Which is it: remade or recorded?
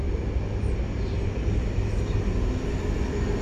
recorded